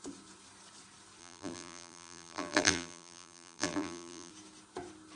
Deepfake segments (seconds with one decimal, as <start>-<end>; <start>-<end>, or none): 1.2-4.3